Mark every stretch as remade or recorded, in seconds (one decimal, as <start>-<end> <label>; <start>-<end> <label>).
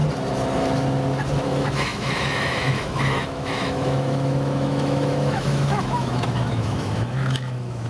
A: 0.0-1.3 recorded; 1.3-7.9 remade